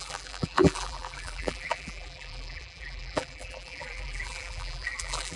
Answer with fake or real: fake